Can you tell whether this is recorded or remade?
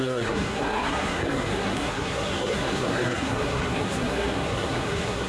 remade